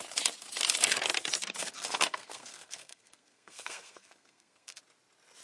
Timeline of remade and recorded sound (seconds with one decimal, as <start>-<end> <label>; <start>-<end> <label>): 0.0-1.6 recorded; 1.6-4.8 remade; 4.8-5.4 recorded